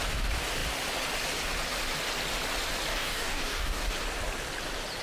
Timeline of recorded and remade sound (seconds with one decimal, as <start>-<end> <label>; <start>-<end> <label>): 0.0-2.9 recorded; 2.9-3.9 remade; 3.9-5.0 recorded